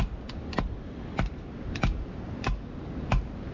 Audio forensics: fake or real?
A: real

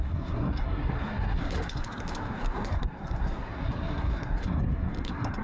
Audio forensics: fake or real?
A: fake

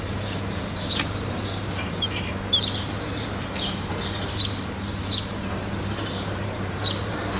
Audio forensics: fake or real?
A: fake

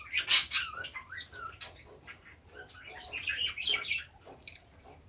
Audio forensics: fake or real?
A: fake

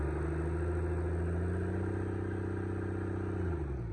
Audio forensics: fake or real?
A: real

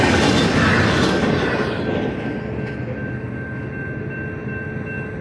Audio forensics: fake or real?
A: real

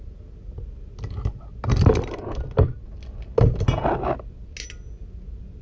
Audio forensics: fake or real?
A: real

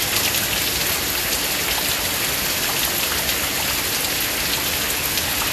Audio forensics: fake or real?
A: real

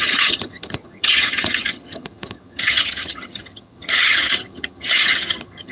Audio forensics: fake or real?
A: fake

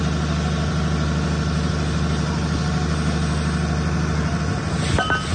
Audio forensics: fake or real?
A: real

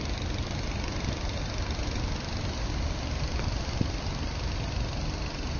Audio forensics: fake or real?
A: real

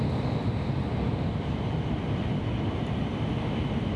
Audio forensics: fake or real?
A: real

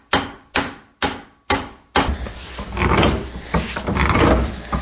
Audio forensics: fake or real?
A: real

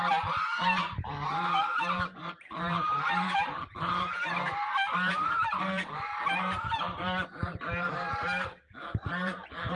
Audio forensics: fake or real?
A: fake